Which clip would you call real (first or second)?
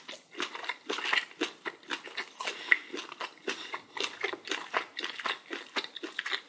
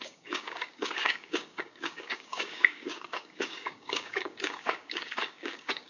first